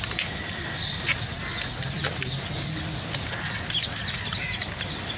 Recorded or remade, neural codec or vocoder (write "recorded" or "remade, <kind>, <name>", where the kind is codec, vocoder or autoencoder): recorded